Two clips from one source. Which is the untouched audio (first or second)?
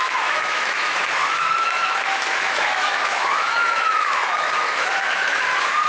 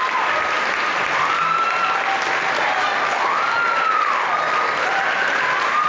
second